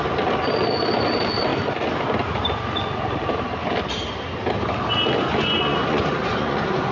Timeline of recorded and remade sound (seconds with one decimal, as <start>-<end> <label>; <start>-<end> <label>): 0.0-5.4 recorded; 5.4-6.9 remade